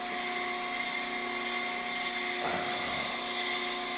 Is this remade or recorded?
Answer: recorded